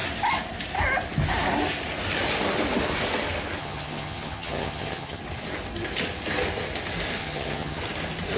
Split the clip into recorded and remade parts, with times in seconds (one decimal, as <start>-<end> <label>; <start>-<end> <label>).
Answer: 0.0-3.6 recorded; 3.6-5.2 remade; 5.2-7.2 recorded; 7.2-7.8 remade; 7.8-8.4 recorded